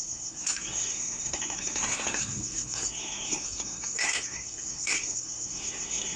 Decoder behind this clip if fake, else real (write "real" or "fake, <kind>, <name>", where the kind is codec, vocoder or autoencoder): fake, codec, SNAC